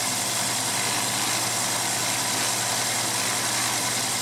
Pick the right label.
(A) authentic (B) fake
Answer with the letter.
A